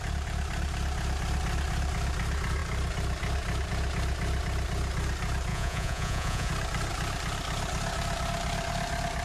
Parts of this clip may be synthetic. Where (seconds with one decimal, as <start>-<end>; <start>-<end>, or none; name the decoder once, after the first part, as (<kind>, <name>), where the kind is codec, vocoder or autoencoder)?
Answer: 5.5-6.5 (vocoder, Vocos)